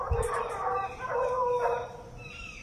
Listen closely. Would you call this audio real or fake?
fake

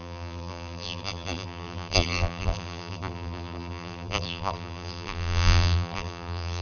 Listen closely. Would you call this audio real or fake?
fake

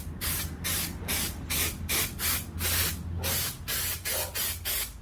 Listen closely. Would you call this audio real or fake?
real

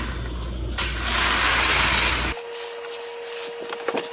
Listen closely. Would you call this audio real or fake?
real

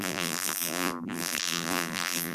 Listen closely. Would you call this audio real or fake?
fake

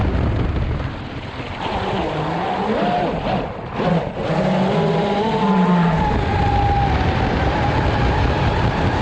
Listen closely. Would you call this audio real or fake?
real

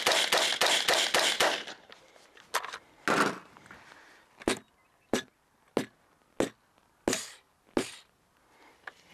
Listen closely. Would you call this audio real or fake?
real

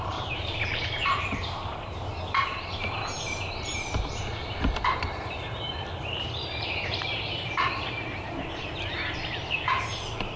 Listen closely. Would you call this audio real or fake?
fake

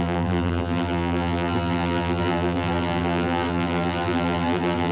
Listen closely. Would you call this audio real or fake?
fake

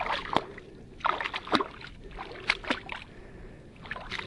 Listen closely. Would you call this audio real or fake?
real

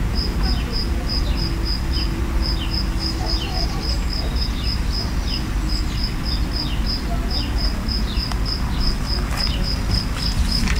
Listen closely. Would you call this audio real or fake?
real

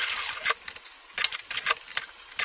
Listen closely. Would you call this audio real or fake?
real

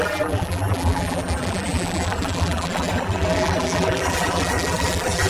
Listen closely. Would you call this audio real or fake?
fake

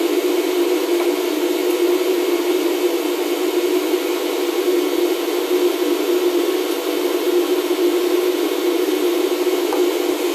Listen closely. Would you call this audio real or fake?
real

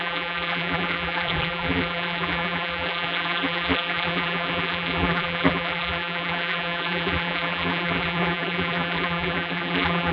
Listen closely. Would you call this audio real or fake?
fake